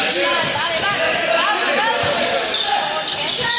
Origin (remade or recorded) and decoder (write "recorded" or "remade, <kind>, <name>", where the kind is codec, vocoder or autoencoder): recorded